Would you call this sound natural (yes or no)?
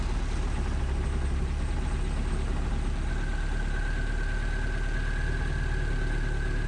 yes